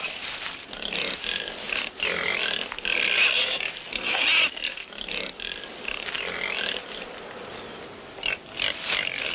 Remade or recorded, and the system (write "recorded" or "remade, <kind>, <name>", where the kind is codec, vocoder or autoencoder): recorded